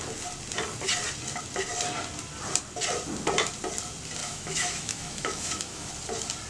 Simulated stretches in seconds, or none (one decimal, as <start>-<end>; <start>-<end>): 4.2-5.9